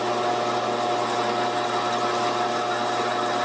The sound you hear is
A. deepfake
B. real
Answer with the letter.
B